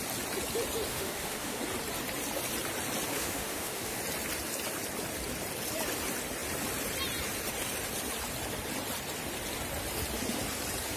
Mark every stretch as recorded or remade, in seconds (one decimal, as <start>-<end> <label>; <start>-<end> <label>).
0.0-0.9 recorded; 0.9-1.6 remade; 1.6-3.1 recorded; 3.1-4.0 remade; 4.0-11.0 recorded